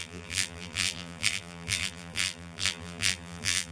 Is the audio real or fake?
fake